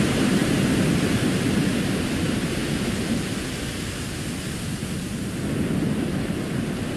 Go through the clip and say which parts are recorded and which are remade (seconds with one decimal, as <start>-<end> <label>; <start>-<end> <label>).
0.0-0.4 remade; 0.4-2.2 recorded; 2.2-2.6 remade; 2.6-7.0 recorded